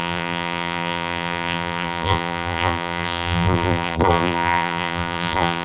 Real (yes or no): no